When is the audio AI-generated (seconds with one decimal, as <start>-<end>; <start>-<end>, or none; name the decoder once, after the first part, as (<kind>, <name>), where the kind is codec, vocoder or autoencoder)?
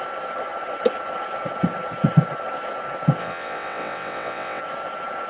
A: 3.2-4.6 (vocoder, WaveNeXt)